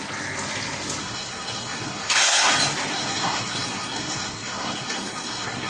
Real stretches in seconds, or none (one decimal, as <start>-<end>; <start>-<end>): 0.0-1.0; 2.5-2.9